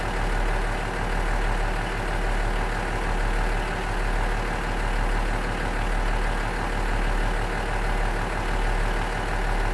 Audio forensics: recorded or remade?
recorded